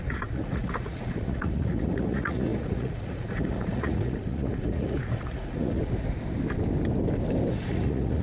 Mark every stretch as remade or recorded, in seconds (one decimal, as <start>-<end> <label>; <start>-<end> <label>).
0.0-5.8 remade; 5.8-7.5 recorded; 7.5-8.2 remade